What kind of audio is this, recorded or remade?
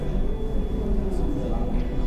recorded